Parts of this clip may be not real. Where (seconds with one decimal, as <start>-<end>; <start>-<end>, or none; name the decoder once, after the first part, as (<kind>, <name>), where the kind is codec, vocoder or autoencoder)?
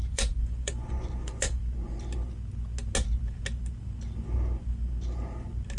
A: 0.0-1.6 (vocoder, Vocos)